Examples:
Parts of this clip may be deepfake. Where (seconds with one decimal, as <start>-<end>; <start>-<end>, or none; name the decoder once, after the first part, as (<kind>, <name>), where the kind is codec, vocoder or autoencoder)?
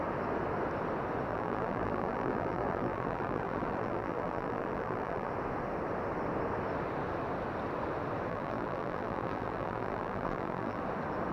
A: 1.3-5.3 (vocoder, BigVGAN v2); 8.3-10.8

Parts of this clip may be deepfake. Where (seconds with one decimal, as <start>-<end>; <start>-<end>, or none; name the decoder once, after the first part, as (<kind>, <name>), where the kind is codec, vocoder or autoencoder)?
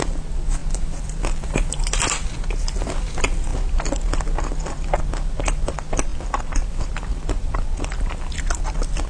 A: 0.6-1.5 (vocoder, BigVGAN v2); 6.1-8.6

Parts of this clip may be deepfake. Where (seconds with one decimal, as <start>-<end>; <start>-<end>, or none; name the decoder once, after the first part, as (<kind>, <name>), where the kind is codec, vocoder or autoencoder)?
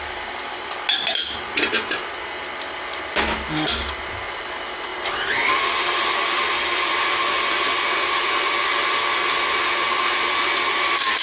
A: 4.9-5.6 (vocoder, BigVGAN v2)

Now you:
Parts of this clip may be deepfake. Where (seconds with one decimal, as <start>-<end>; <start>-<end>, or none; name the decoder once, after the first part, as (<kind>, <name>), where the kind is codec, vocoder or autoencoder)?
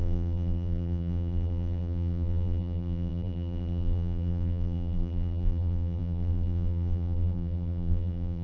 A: 0.0-8.4 (vocoder, BigVGAN v2)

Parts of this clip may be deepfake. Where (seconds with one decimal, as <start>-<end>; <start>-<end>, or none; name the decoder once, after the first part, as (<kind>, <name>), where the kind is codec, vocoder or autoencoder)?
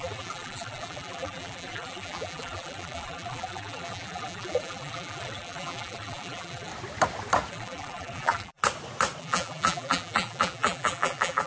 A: 0.0-6.7 (vocoder, BigVGAN v2); 7.5-8.6; 9.2-11.5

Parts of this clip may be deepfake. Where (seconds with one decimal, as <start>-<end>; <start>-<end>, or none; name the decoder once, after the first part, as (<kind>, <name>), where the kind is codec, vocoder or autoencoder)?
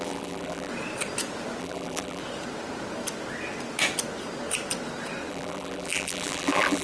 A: 0.0-0.7 (vocoder, BigVGAN v2); 1.6-2.2; 5.3-6.8